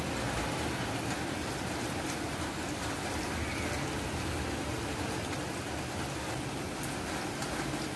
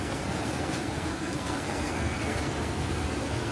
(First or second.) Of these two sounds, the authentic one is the first